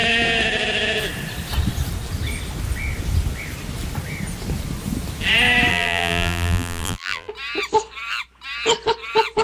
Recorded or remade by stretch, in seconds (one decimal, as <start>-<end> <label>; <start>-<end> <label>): 0.0-5.7 recorded; 5.7-7.3 remade; 7.3-9.4 recorded